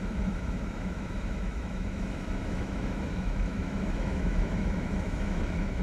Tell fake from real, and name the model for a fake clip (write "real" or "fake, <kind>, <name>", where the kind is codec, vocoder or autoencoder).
fake, autoencoder, DAC-VAE